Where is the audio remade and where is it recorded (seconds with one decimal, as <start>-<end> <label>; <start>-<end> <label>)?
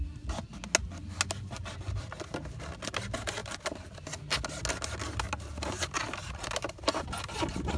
0.0-7.8 recorded